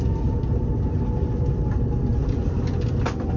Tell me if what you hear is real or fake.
real